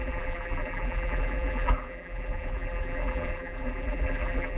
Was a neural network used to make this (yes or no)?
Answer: yes